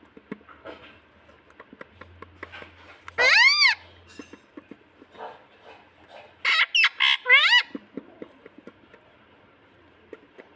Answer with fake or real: real